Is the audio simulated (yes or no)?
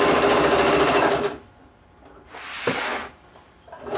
yes